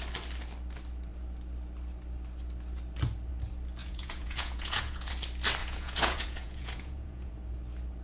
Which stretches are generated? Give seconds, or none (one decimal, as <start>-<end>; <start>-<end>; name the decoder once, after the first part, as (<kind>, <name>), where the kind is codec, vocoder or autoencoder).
3.8-5.1 (vocoder, Vocos); 5.6-7.3